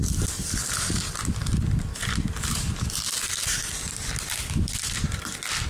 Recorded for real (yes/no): no